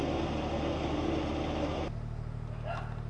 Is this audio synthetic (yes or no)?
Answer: no